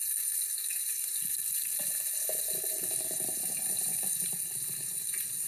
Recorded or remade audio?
recorded